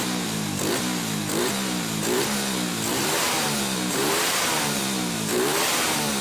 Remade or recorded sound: remade